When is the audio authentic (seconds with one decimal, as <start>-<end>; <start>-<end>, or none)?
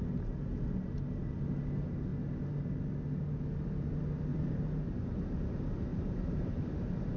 0.0-4.3; 4.9-5.9; 6.6-7.2